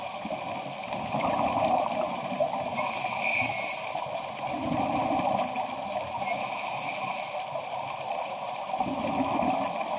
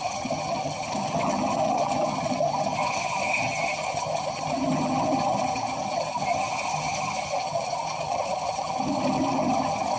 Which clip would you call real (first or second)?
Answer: first